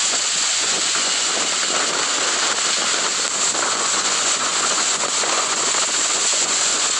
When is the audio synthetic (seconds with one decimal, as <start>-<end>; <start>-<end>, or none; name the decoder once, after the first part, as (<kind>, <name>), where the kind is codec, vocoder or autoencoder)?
0.0-1.3 (vocoder, Vocos); 3.7-7.0